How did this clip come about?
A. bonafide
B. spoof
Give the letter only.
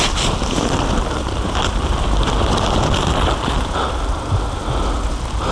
A